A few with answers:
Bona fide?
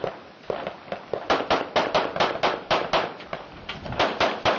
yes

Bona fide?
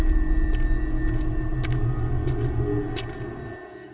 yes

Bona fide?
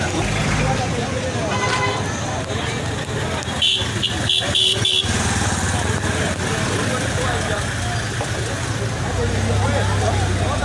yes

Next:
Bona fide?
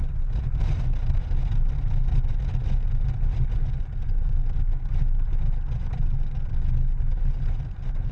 yes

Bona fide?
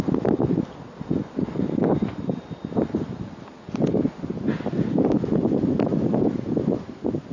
yes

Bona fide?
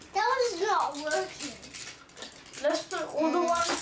yes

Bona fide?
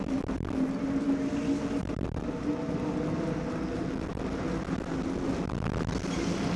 yes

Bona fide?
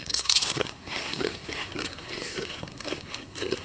no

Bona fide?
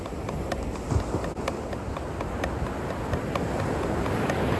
yes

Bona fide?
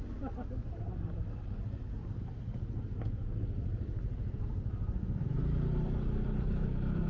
yes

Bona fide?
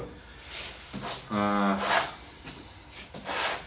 yes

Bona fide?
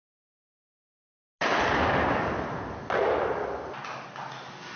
yes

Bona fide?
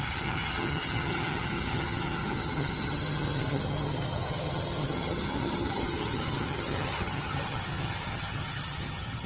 no